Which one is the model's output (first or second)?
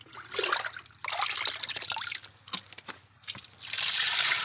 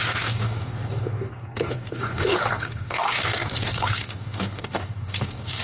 second